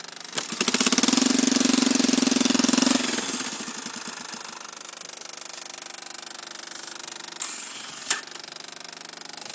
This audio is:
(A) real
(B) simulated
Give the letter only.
A